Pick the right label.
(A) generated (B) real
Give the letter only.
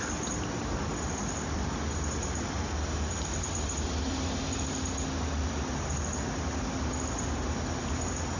B